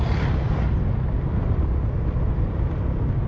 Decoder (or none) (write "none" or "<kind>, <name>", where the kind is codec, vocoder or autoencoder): none